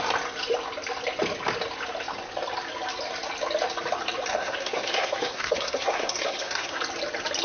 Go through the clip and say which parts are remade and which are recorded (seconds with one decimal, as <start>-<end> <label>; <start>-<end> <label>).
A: 0.0-4.3 recorded; 4.3-6.8 remade; 6.8-7.4 recorded